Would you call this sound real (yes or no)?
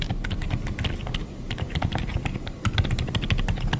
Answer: yes